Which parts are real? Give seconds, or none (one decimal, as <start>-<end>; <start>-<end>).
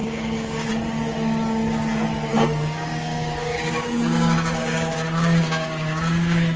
0.7-2.3